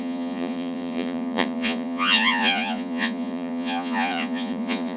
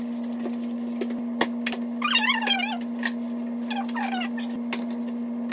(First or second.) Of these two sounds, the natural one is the second